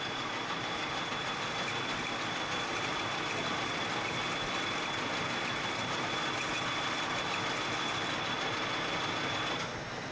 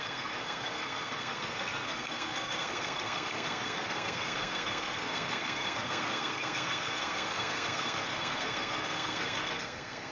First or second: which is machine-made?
second